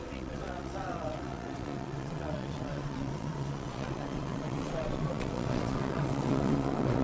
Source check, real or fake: fake